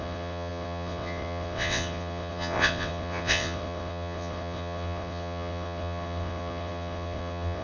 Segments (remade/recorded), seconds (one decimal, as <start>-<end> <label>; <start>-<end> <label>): 0.0-7.6 remade